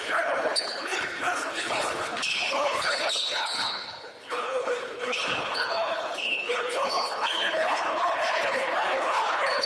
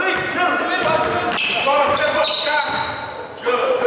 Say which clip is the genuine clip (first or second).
second